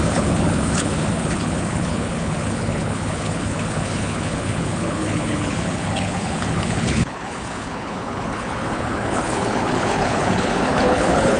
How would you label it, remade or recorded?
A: remade